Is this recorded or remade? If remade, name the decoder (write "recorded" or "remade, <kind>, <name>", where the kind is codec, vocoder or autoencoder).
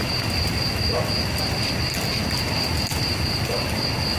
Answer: recorded